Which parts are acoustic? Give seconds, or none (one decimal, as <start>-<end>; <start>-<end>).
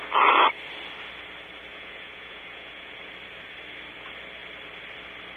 0.0-1.7; 3.1-5.4